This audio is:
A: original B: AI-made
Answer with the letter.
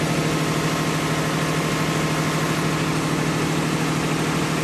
A